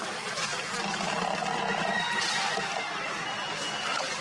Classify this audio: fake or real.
real